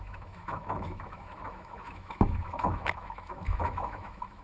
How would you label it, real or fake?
fake